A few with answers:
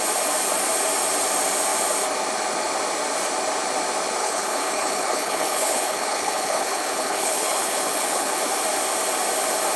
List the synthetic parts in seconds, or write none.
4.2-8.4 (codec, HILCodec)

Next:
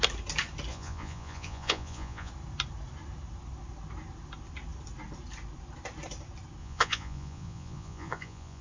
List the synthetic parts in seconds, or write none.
0.7-2.3 (vocoder, Vocos); 6.6-8.6

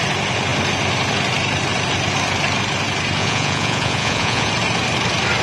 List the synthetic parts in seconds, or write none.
3.2-4.5 (vocoder, Vocos)

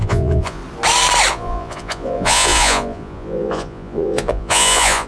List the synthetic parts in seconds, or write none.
0.0-0.6 (vocoder, Vocos); 1.3-5.1